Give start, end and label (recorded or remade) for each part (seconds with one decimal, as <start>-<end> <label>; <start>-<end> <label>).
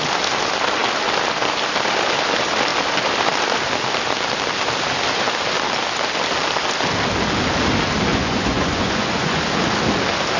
0.0-8.1 recorded; 8.1-9.4 remade; 9.4-10.4 recorded